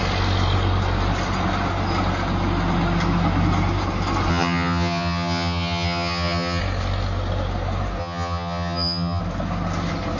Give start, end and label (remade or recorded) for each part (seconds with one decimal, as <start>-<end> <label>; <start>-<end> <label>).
0.0-4.3 recorded; 4.3-6.6 remade; 6.6-8.0 recorded; 8.0-9.2 remade; 9.2-10.2 recorded